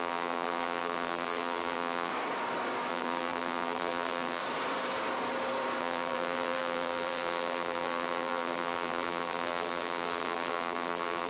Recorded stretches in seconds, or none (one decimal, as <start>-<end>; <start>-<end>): 2.1-2.9; 4.4-5.8